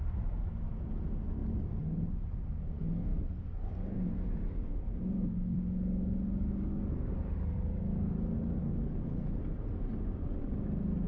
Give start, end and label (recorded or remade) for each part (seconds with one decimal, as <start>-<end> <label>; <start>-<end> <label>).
0.0-8.6 recorded; 8.6-9.4 remade; 9.4-11.1 recorded